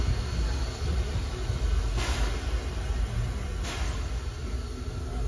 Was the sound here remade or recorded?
recorded